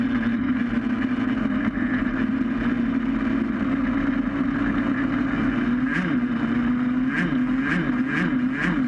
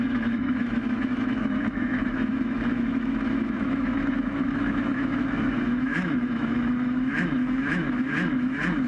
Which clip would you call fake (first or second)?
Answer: second